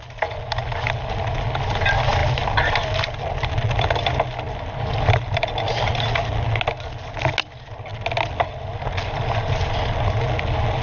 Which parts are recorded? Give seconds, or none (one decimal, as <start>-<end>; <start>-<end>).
0.0-10.8

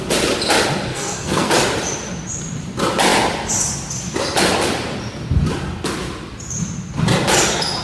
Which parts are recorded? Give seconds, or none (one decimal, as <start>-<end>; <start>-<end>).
0.0-0.9; 1.5-7.8